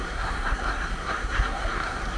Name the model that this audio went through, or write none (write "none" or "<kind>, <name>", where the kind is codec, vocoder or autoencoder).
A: codec, SNAC